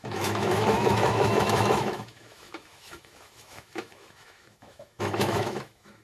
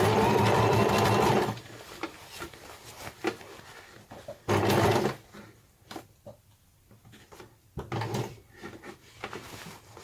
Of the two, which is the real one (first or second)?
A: second